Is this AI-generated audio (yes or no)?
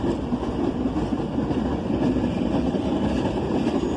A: no